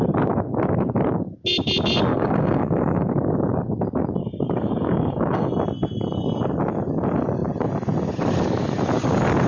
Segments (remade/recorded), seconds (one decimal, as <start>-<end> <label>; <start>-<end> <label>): 0.0-2.1 recorded; 2.1-3.3 remade; 3.3-4.2 recorded; 4.2-5.5 remade; 5.5-9.5 recorded

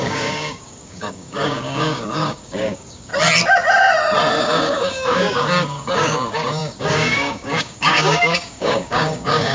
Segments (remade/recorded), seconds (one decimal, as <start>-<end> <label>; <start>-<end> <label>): 0.0-3.1 remade; 3.1-4.4 recorded; 4.4-9.5 remade

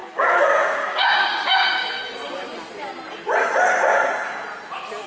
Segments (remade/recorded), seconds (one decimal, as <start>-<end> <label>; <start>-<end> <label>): 0.0-2.0 remade; 2.0-5.1 recorded

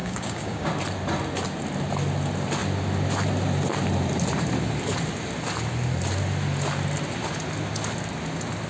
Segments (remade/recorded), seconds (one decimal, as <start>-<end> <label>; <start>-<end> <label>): 0.0-0.7 remade; 0.7-8.7 recorded